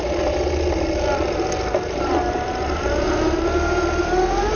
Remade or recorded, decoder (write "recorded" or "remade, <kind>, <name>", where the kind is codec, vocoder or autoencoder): recorded